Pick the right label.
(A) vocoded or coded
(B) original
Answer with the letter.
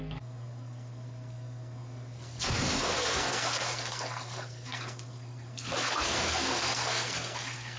A